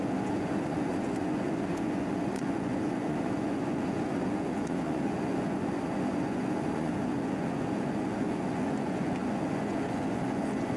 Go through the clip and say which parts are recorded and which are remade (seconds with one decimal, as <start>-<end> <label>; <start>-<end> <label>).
0.0-10.8 remade

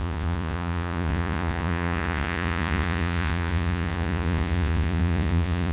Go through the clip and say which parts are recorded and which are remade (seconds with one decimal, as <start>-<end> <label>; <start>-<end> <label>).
0.0-5.7 remade

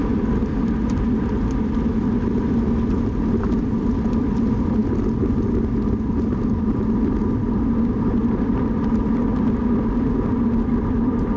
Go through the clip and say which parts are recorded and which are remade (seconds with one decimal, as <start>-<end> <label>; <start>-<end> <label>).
0.0-11.4 recorded

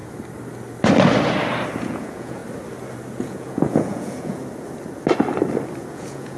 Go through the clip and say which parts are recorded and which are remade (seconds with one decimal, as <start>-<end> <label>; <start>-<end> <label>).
0.0-1.8 recorded; 1.8-2.4 remade; 2.4-3.1 recorded; 3.1-4.4 remade; 4.4-5.9 recorded; 5.9-6.4 remade

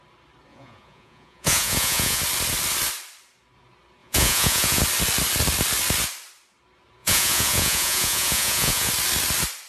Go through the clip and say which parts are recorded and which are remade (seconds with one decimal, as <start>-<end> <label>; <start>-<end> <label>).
0.0-0.5 recorded; 0.5-2.2 remade; 2.2-4.0 recorded; 4.0-4.8 remade; 4.8-7.0 recorded; 7.0-8.9 remade; 8.9-9.7 recorded

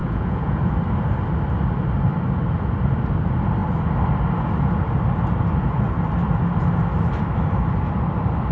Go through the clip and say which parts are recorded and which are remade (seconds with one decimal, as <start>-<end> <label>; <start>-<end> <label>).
0.0-0.7 remade; 0.7-8.5 recorded

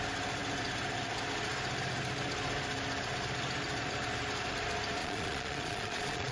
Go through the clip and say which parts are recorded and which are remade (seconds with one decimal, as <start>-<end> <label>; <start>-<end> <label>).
0.0-5.0 recorded; 5.0-6.3 remade